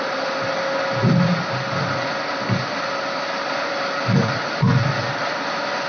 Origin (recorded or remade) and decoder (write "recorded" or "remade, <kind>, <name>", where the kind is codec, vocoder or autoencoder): recorded